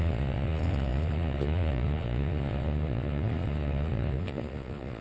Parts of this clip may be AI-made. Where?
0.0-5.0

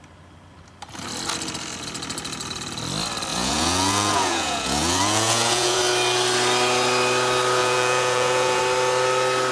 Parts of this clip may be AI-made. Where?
3.3-5.8; 7.6-8.6

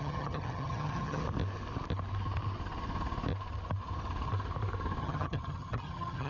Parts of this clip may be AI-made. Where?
0.0-1.2; 5.0-6.3

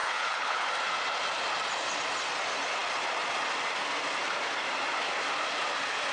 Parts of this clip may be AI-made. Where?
0.0-0.7

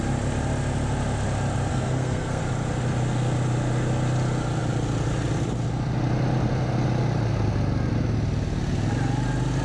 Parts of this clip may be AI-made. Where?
1.7-2.4

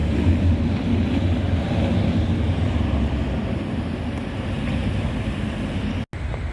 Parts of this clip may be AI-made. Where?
none

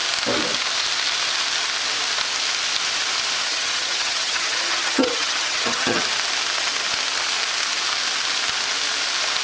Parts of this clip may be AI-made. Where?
3.4-6.0

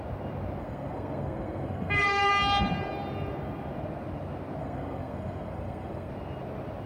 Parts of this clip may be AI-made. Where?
0.6-2.3; 4.6-6.1